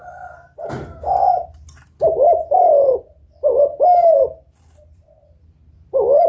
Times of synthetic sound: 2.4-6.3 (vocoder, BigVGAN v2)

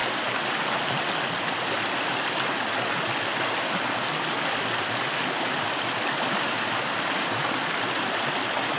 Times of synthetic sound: none

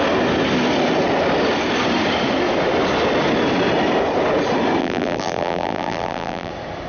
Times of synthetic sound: 4.8-6.5 (vocoder, BigVGAN v2)